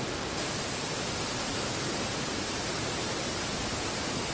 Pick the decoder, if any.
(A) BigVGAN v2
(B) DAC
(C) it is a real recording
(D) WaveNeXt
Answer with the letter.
C